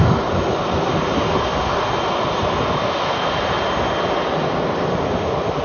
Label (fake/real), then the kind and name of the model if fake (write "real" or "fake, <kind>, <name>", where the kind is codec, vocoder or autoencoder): real